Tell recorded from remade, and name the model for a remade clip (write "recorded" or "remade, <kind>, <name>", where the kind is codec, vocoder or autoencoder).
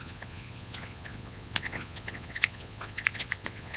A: remade, vocoder, Vocos